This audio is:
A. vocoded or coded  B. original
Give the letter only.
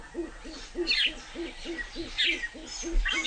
B